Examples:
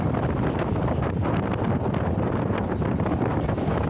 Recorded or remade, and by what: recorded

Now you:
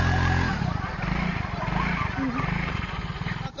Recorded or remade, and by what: recorded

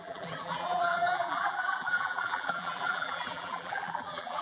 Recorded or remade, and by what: remade, vocoder, BigVGAN v2